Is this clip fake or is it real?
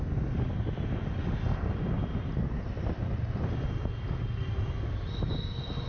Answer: real